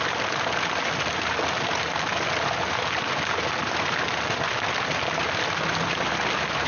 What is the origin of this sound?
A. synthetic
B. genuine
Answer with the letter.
B